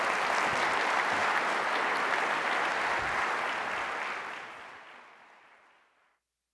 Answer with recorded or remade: recorded